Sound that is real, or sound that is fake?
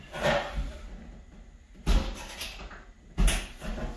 real